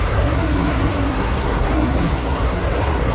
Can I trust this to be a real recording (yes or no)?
no